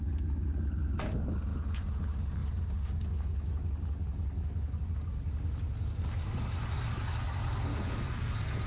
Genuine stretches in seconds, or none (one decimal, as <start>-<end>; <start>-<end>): 0.0-1.5; 2.0-7.7